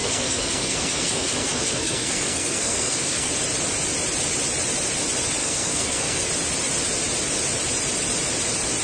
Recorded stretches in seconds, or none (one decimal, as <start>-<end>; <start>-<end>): 3.3-5.4; 6.3-8.8